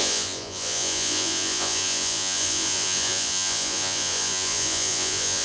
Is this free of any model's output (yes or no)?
no